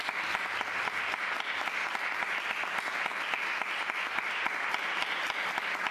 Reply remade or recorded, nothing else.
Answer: recorded